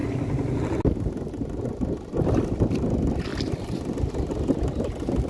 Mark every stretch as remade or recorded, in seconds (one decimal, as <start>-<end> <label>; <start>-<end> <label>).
0.0-5.3 recorded